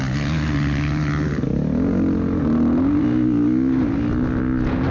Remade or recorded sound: recorded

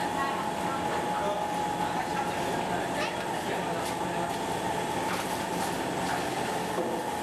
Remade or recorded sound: recorded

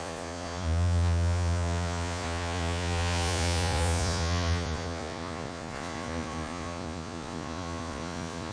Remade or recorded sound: remade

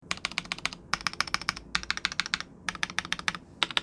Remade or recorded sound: recorded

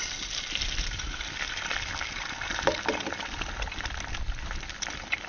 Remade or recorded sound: recorded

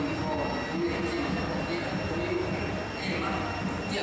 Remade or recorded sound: recorded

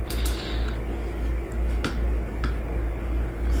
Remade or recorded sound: remade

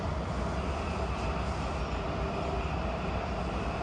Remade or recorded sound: recorded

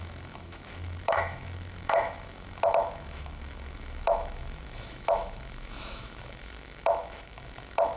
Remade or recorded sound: remade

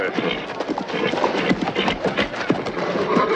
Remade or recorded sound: recorded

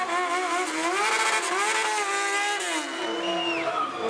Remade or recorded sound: recorded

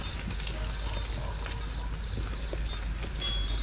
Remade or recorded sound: recorded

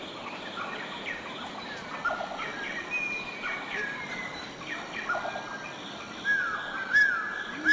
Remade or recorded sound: recorded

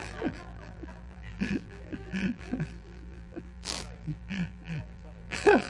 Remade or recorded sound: remade